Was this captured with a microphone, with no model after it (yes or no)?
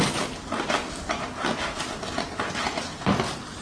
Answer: yes